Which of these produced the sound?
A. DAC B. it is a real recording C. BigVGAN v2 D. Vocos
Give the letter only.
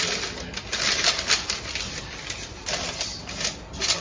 B